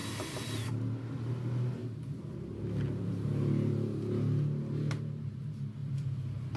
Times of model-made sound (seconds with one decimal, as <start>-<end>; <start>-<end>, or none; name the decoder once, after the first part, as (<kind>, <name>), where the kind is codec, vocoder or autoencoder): 0.0-0.7 (vocoder, BigVGAN v2); 1.8-2.6; 5.8-6.6